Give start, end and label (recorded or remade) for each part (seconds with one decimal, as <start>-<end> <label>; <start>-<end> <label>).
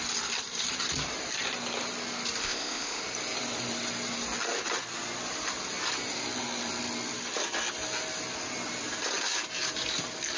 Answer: 0.0-2.4 recorded; 2.4-3.0 remade; 3.0-10.4 recorded